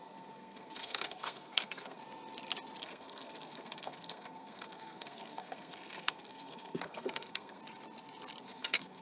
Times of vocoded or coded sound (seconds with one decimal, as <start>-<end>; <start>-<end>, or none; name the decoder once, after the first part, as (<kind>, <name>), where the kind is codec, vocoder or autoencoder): 0.0-2.0 (codec, SNAC); 2.8-7.6; 8.4-9.0